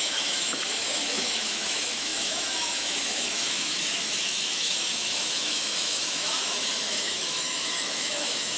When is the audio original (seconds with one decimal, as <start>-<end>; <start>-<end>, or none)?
none